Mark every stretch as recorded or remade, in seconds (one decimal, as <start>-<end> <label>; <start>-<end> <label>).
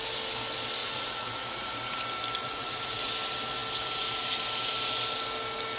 0.0-0.8 recorded; 0.8-2.0 remade; 2.0-2.4 recorded; 2.4-3.1 remade; 3.1-5.8 recorded